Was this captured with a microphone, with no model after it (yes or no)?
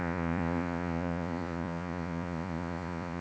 no